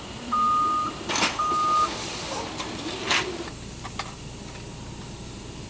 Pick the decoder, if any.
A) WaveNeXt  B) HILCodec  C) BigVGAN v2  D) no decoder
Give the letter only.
D